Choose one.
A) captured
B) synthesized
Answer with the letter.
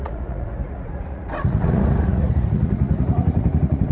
B